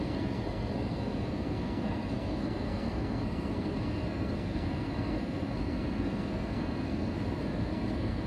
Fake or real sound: fake